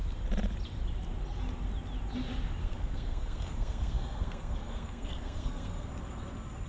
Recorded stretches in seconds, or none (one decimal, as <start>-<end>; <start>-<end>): 0.0-2.6; 5.9-6.7